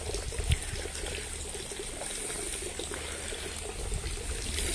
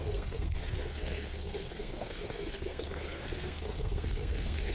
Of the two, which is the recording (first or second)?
first